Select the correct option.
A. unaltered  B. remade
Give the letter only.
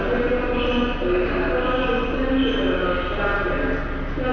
A